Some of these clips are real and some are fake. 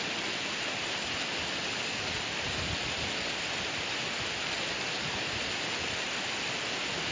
real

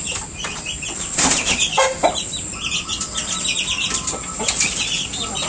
real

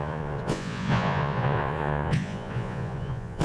fake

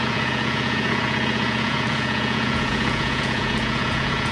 fake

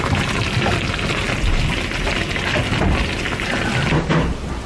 real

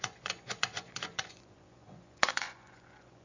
fake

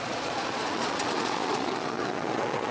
fake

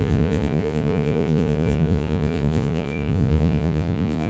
fake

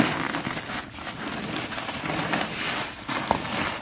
real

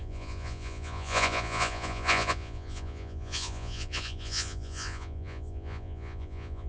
fake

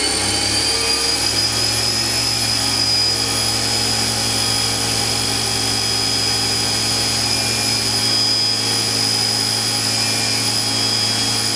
real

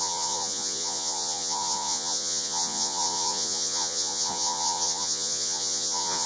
fake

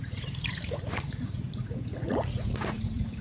fake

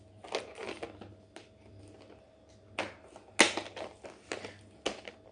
real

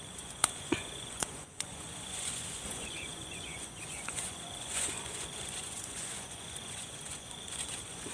fake